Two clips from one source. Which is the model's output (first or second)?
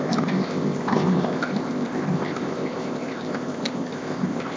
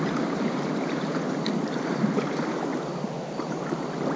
first